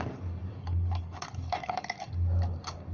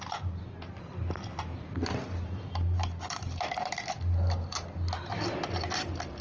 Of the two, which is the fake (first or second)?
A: first